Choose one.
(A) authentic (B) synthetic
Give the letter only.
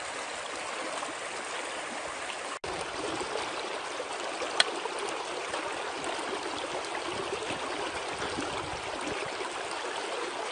A